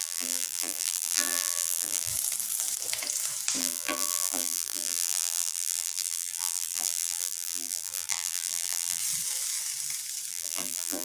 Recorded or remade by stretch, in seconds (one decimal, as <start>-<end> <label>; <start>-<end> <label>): 0.0-2.1 remade; 2.1-3.6 recorded; 3.6-9.0 remade; 9.0-10.3 recorded; 10.3-11.0 remade